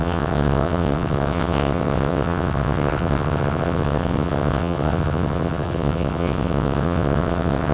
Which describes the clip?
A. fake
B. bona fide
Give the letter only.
A